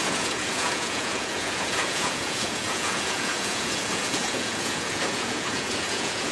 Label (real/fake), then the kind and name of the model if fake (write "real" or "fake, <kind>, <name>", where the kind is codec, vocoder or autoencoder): fake, vocoder, Vocos